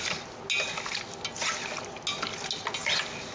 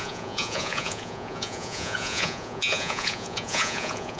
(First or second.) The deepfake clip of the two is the second